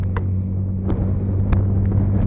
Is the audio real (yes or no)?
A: yes